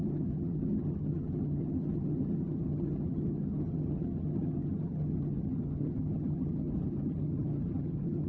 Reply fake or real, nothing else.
fake